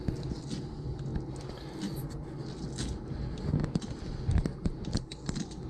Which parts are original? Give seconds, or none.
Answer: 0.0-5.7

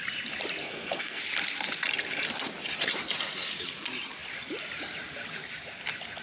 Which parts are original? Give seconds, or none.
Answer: 0.0-0.6; 1.2-6.2

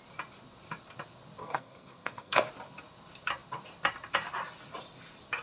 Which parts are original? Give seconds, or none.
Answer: 0.0-1.4; 2.5-5.4